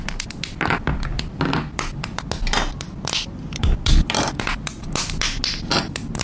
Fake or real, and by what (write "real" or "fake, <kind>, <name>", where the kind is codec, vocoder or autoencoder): real